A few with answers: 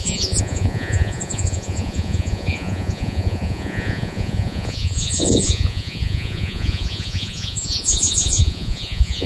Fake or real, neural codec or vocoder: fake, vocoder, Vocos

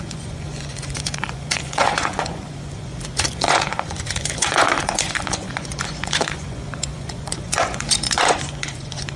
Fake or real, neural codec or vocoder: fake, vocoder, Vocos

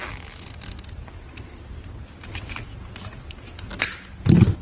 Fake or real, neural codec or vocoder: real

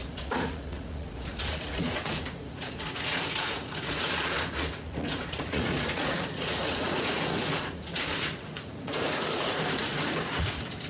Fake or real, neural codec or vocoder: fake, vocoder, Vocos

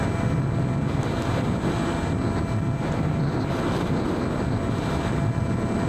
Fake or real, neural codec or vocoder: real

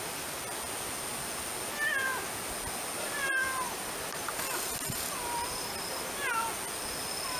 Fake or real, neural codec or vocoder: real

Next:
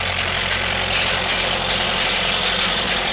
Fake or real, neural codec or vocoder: real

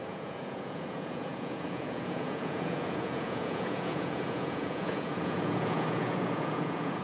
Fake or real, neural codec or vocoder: fake, vocoder, Vocos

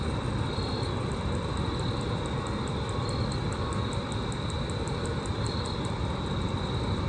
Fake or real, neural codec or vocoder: real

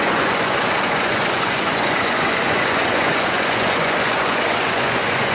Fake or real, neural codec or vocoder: fake, vocoder, Vocos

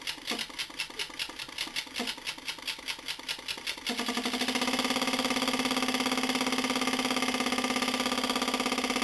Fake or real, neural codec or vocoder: real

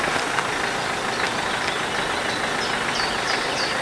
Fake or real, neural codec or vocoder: real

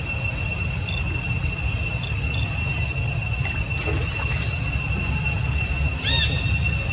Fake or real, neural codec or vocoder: real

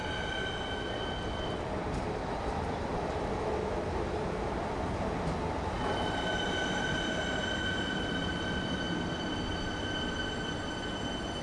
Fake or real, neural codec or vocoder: real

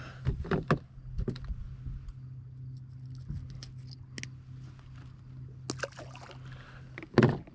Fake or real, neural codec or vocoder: real